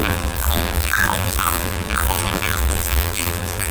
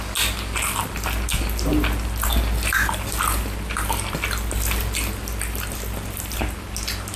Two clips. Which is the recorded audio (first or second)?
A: second